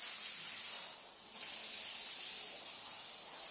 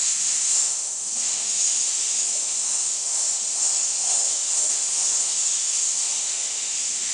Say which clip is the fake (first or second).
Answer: second